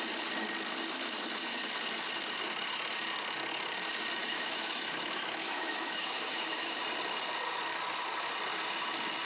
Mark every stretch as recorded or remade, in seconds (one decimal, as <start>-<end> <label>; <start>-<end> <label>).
0.0-4.2 recorded; 4.2-6.8 remade; 6.8-9.3 recorded